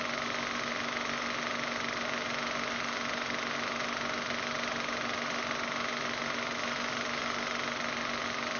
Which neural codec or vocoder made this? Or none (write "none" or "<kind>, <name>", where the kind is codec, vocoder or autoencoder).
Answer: none